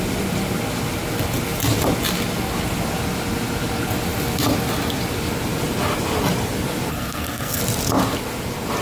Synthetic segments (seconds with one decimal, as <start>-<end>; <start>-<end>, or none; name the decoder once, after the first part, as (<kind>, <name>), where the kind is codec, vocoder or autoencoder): 6.9-7.6 (codec, SNAC)

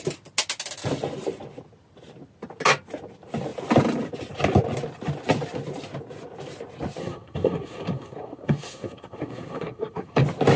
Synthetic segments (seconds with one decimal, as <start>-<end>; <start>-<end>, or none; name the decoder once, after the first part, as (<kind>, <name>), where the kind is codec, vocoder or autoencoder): 7.0-10.2 (codec, SNAC)

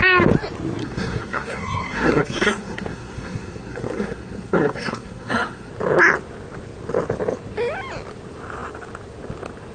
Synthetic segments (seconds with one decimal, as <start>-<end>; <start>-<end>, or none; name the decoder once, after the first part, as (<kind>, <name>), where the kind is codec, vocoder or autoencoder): 0.8-5.7 (codec, SNAC)

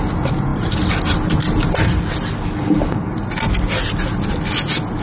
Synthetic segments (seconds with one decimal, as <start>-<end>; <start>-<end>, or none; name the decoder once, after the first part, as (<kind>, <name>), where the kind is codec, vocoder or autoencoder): none

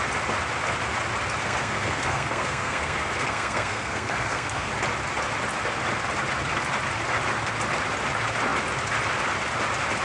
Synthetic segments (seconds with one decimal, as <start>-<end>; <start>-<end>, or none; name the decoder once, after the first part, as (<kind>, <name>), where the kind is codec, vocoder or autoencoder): 1.4-4.7 (codec, SNAC)

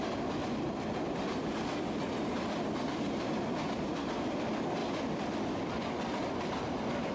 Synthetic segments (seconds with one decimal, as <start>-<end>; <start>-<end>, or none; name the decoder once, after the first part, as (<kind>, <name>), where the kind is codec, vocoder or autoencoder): none

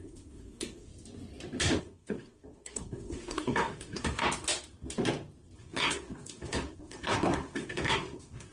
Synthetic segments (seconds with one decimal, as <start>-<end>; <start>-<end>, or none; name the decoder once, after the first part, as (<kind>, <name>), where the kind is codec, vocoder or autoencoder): 0.0-0.9 (codec, SNAC); 1.8-4.2; 5.6-8.5

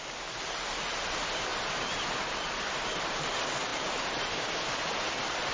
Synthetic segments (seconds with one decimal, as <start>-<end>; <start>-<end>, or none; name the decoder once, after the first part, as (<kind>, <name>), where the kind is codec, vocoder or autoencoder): none